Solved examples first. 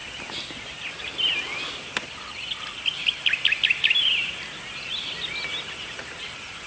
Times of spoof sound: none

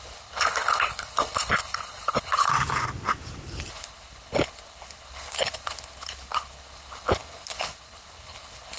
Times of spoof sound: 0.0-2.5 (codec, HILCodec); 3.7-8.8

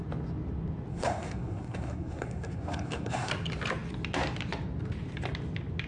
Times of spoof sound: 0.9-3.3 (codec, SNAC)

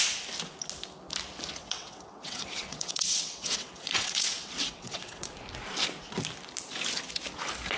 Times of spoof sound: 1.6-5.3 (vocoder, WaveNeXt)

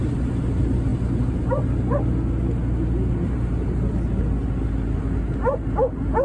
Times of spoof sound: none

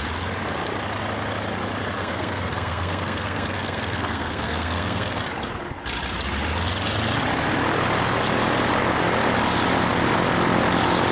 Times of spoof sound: 2.0-5.2 (codec, SNAC)

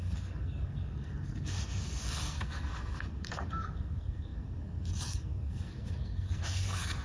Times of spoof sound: 0.0-7.0 (codec, SNAC)

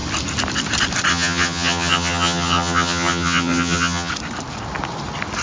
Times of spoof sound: 1.1-4.1 (vocoder, HiFi-GAN)